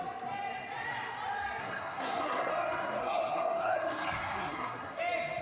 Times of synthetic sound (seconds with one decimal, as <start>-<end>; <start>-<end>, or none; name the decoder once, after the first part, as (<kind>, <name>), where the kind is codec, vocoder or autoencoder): 1.6-2.5 (codec, SNAC); 3.0-5.0